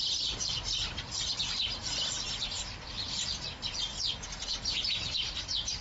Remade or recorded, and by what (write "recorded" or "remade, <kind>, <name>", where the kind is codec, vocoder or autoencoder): remade, vocoder, BigVGAN v2